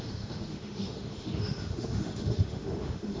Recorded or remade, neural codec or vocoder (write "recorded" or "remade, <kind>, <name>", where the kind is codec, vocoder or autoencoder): remade, autoencoder, DAC-VAE